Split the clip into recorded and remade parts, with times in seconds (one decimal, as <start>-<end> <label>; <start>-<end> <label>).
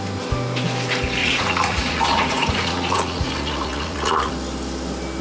0.0-1.2 recorded; 1.2-4.3 remade; 4.3-5.2 recorded